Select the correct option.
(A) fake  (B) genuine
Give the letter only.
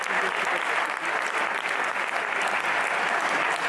B